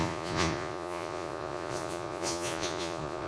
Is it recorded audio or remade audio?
remade